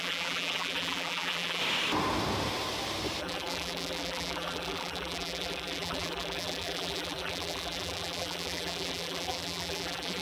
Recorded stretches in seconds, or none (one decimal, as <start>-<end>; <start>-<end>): 1.6-3.2